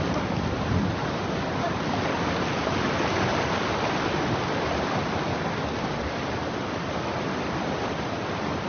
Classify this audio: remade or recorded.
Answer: recorded